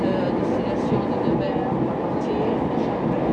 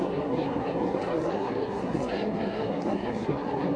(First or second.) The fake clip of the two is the second